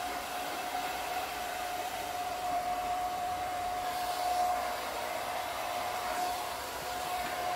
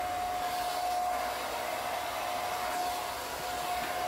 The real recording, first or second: second